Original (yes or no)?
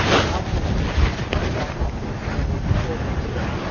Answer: yes